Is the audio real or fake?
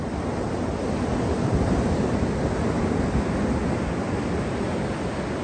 real